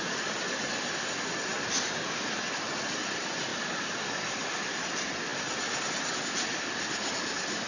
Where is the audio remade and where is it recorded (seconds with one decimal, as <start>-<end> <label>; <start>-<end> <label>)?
0.0-3.5 recorded; 3.5-4.1 remade; 4.1-7.7 recorded